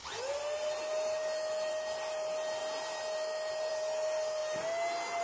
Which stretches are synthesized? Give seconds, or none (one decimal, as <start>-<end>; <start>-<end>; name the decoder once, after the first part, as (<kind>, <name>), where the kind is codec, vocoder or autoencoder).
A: none